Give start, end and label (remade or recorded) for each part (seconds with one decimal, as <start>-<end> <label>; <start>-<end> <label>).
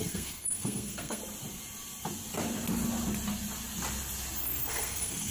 0.0-1.2 remade; 1.2-4.4 recorded; 4.4-5.3 remade